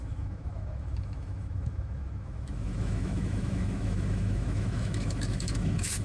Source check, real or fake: fake